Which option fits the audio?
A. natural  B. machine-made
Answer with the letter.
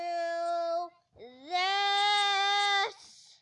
A